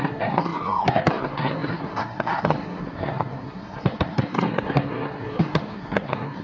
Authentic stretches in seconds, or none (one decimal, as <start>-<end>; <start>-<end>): none